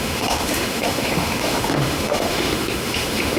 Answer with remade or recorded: remade